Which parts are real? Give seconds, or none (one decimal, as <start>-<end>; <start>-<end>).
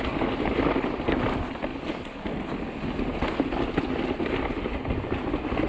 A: 0.0-5.7